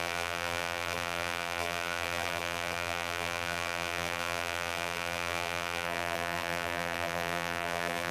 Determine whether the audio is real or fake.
fake